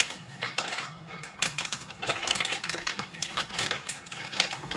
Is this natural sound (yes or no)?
no